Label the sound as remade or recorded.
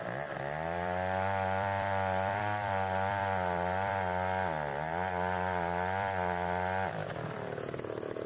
remade